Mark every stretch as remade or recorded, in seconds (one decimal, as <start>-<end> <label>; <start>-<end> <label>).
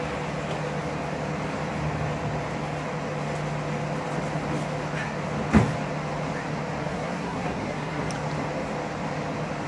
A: 0.0-6.8 recorded; 6.8-8.1 remade; 8.1-9.7 recorded